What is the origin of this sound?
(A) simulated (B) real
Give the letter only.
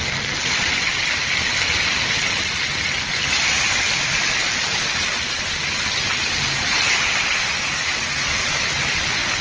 B